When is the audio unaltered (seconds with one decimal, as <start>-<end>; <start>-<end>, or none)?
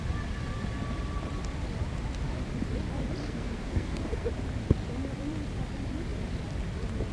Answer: 0.0-3.2; 4.3-7.1